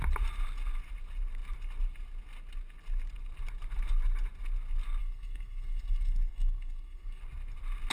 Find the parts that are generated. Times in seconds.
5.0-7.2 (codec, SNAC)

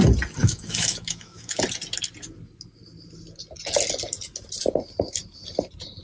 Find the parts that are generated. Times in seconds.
0.4-1.6 (autoencoder, DAC-VAE)

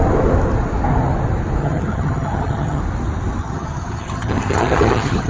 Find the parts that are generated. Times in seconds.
1.6-2.8 (vocoder, HiFi-GAN); 3.4-5.3

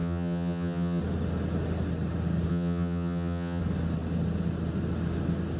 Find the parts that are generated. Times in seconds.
0.0-1.0 (vocoder, HiFi-GAN); 2.5-3.6

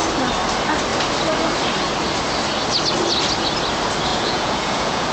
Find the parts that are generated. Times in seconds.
4.1-5.1 (vocoder, Vocos)

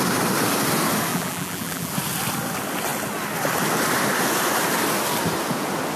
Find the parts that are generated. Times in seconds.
1.1-1.9 (vocoder, BigVGAN v2)